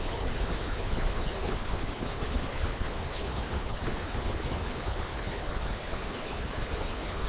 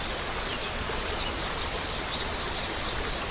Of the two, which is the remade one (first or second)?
first